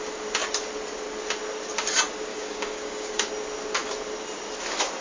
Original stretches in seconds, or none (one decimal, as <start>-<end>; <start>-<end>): 0.0-2.3; 3.3-5.0